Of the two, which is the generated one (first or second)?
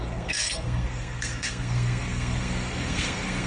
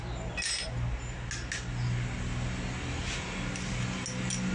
first